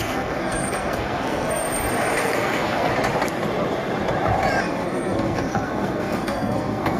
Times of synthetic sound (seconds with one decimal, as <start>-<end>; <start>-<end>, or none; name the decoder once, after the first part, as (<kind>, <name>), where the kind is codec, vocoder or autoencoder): 0.0-1.6 (codec, SNAC); 2.2-2.9; 4.6-7.0

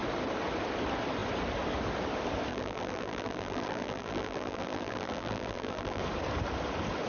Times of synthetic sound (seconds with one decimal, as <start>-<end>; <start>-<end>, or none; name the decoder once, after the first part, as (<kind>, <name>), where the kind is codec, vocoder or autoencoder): 2.5-6.0 (vocoder, BigVGAN v2)

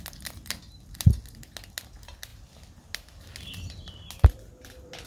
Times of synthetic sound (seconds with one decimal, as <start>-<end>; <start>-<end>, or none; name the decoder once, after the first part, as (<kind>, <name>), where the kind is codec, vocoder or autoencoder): none

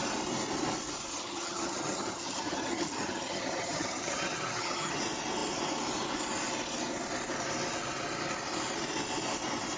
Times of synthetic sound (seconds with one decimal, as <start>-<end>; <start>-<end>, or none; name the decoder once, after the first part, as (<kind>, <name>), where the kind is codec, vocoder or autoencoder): 1.1-5.0 (vocoder, HiFi-GAN)

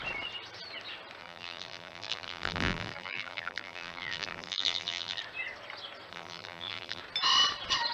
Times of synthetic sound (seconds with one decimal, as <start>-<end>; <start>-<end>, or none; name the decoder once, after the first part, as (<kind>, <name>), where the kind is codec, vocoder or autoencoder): 1.2-5.2 (vocoder, BigVGAN v2); 6.1-7.0

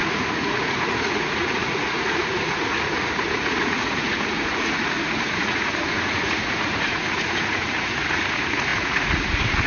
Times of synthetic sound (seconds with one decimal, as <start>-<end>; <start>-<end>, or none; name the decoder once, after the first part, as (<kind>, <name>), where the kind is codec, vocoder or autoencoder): 0.0-9.7 (vocoder, Vocos)

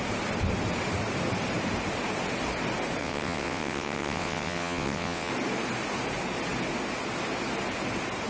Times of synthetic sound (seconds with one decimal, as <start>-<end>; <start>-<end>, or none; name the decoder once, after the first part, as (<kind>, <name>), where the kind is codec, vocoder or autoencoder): 3.0-5.3 (vocoder, WaveNeXt)

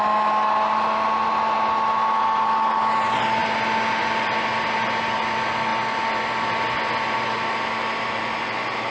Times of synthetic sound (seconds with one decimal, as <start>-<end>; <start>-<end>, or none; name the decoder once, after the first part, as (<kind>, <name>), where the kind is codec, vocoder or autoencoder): none